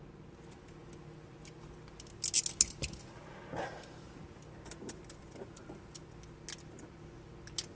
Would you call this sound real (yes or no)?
yes